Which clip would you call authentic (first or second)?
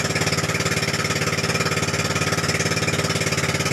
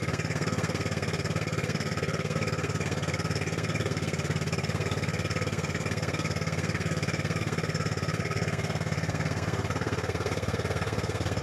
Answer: first